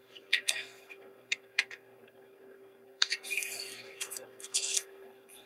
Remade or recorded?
remade